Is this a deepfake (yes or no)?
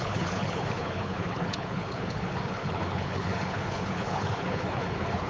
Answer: yes